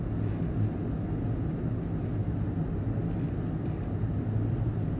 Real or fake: real